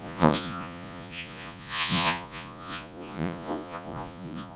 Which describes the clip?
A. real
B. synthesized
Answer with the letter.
B